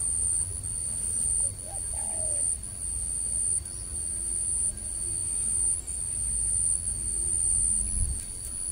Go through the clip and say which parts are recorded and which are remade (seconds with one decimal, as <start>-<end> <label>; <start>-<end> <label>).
0.0-8.7 recorded